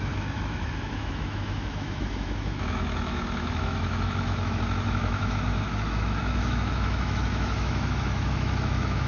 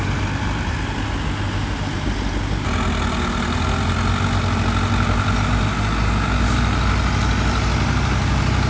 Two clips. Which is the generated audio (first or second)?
first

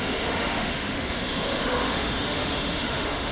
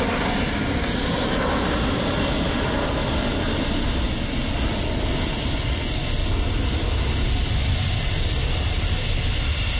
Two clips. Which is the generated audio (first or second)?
first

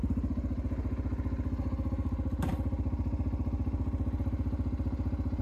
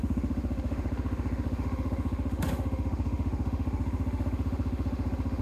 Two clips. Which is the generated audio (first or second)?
second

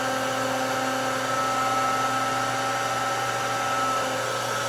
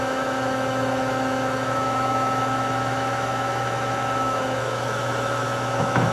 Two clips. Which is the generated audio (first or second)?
second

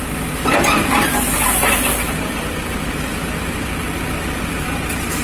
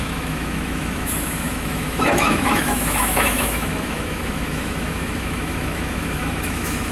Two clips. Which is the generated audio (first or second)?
second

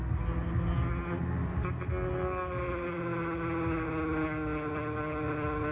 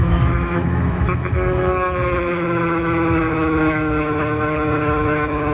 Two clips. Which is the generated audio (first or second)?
second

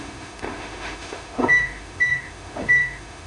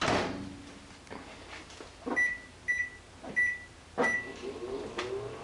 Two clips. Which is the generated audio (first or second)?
first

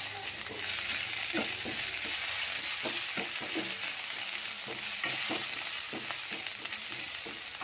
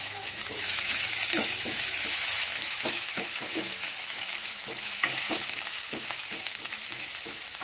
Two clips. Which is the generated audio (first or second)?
second